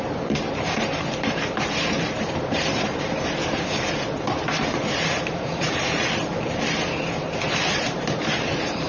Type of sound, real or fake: fake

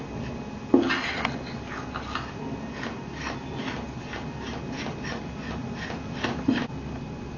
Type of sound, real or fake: real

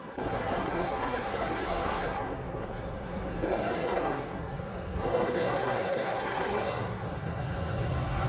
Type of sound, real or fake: fake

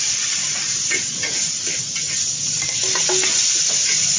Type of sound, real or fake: real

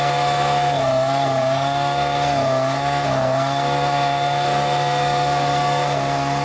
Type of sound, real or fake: fake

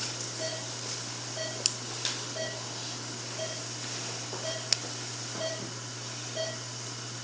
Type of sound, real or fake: real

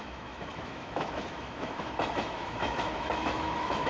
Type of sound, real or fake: fake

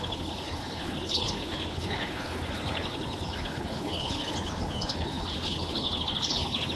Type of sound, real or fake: fake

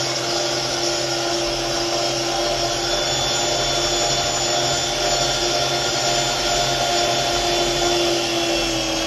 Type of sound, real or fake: real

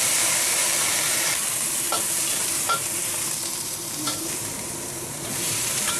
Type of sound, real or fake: fake